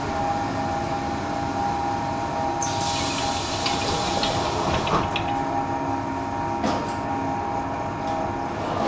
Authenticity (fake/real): real